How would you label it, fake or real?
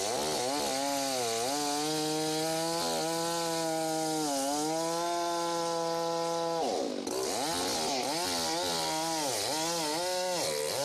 real